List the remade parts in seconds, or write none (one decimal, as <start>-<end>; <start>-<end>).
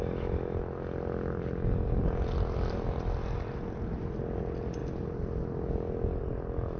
none